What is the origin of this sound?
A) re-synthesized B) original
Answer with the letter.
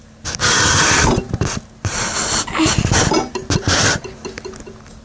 B